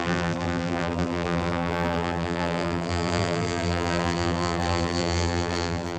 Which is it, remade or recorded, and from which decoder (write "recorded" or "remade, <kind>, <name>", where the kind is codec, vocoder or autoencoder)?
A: remade, vocoder, BigVGAN v2